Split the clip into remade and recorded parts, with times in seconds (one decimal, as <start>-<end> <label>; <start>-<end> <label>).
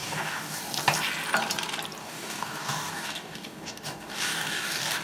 0.0-0.6 remade; 0.6-2.0 recorded; 2.0-5.0 remade